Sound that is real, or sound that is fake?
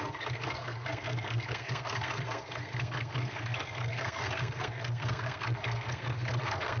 fake